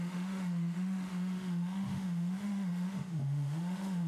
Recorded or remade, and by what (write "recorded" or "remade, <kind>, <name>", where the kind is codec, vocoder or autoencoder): remade, autoencoder, DAC-VAE